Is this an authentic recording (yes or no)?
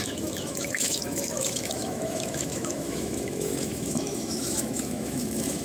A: no